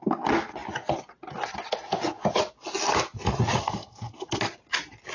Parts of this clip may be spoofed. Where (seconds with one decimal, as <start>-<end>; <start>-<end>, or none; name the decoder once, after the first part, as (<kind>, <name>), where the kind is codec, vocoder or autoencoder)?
3.6-4.4 (codec, SNAC)